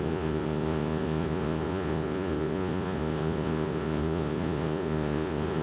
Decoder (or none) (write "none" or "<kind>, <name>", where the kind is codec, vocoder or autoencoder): vocoder, Vocos